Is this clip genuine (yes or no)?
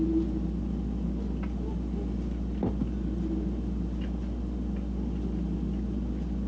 yes